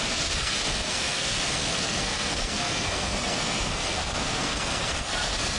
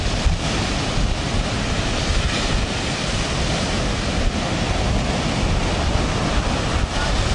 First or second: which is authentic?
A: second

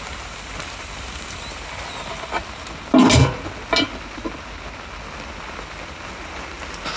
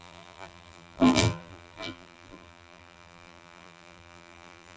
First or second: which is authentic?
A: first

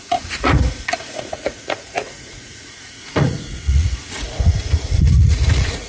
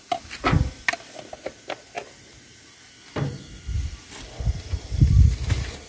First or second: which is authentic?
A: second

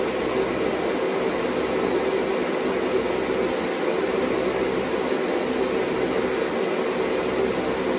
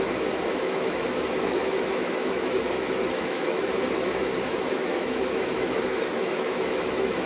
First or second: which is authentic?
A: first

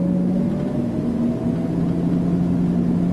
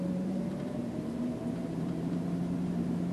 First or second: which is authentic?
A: first